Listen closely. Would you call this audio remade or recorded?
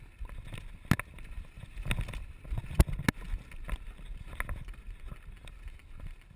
recorded